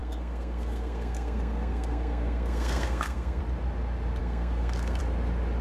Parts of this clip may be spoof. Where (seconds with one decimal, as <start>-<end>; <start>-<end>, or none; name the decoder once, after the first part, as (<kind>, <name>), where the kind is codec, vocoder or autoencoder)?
0.0-3.4 (codec, SNAC); 4.2-5.0